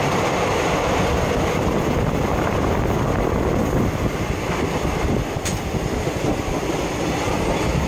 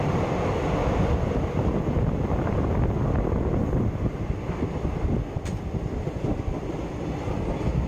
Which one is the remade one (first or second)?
first